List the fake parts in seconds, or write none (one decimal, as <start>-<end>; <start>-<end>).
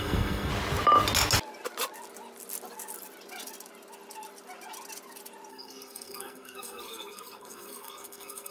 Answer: 0.0-0.5; 5.5-8.5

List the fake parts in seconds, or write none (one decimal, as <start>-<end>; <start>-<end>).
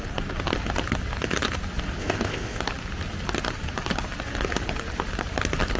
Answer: 2.0-2.6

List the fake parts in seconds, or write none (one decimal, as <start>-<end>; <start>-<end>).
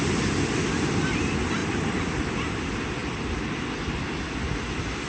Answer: none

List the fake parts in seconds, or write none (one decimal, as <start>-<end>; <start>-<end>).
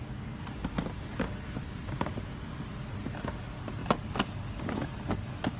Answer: none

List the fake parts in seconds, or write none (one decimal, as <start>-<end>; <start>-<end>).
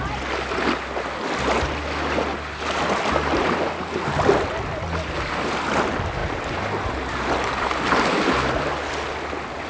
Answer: 6.2-7.1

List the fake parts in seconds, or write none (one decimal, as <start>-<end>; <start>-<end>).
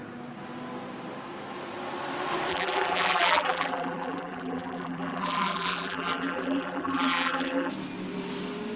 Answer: 2.5-7.7